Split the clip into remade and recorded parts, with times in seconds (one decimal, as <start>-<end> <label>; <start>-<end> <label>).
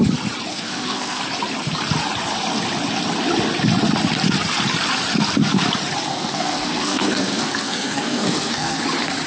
0.0-0.5 recorded; 0.5-1.2 remade; 1.2-6.1 recorded; 6.1-8.8 remade; 8.8-9.3 recorded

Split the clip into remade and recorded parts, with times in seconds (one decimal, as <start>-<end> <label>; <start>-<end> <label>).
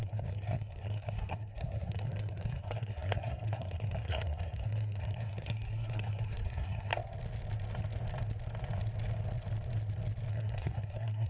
0.0-6.9 remade; 6.9-10.3 recorded; 10.3-11.3 remade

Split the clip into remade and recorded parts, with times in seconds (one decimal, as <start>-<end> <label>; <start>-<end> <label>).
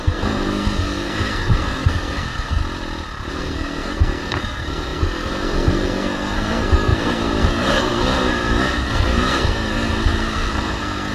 0.0-2.6 remade; 2.6-3.3 recorded; 3.3-11.1 remade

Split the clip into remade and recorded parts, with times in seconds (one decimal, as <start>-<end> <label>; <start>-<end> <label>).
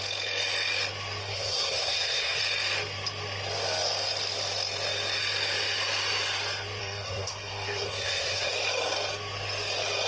0.0-1.2 recorded; 1.2-2.4 remade; 2.4-6.8 recorded; 6.8-8.5 remade; 8.5-10.1 recorded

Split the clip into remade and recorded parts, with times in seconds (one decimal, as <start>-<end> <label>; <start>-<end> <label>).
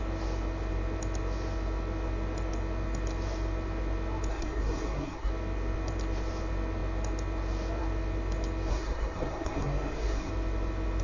0.0-4.3 recorded; 4.3-5.3 remade; 5.3-8.7 recorded; 8.7-10.3 remade; 10.3-11.0 recorded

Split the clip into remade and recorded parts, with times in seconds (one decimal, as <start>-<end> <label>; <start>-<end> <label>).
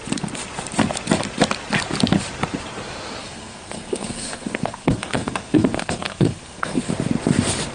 0.0-3.2 recorded; 3.2-6.9 remade; 6.9-7.7 recorded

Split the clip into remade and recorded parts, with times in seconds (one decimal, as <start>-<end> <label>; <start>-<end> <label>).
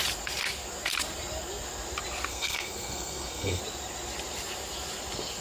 0.0-2.3 recorded; 2.3-3.6 remade; 3.6-5.4 recorded